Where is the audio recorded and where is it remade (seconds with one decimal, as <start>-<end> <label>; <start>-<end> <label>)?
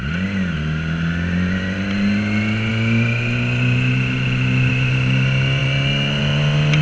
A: 0.0-6.8 recorded